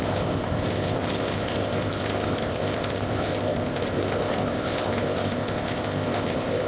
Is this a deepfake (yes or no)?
yes